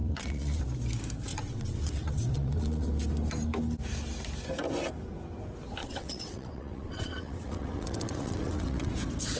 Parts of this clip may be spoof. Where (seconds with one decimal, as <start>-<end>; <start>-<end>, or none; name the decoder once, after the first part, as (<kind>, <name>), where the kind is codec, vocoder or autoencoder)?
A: 0.0-0.6 (vocoder, WaveNeXt); 1.3-2.9; 5.8-8.9